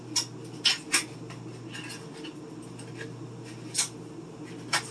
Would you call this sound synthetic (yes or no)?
no